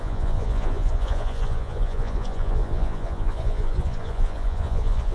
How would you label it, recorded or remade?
remade